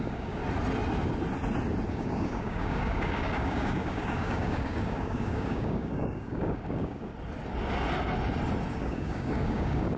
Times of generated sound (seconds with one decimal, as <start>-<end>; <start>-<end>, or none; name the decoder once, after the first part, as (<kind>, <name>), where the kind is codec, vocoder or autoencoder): 0.0-0.4 (codec, DAC); 1.9-7.1; 8.7-10.0